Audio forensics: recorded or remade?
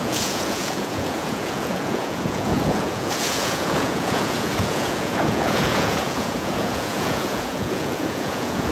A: remade